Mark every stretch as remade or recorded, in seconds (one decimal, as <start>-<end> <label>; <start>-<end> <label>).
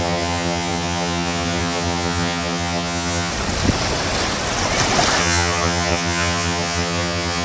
0.0-3.3 remade; 3.3-5.2 recorded; 5.2-7.4 remade